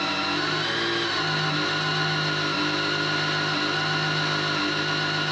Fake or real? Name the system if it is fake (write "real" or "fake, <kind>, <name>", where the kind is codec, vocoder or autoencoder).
real